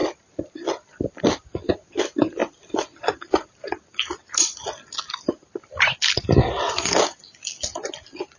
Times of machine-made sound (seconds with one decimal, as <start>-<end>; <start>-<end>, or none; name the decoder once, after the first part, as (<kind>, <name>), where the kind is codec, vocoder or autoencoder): 0.0-1.2 (vocoder, BigVGAN v2); 2.4-4.7; 6.2-7.2